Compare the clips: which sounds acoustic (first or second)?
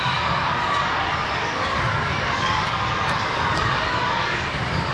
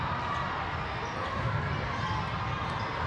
second